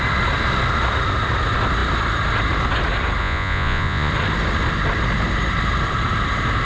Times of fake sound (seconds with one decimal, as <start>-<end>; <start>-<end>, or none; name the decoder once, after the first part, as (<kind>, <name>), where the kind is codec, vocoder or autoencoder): 3.2-4.1 (vocoder, Vocos)